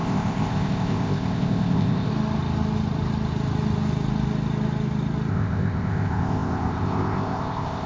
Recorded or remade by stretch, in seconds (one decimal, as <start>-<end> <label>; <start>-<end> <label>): 0.0-2.1 remade; 2.1-5.3 recorded; 5.3-7.9 remade